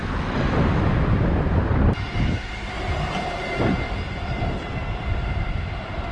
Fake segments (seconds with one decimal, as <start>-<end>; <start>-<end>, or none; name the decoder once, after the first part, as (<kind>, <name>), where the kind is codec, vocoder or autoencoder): none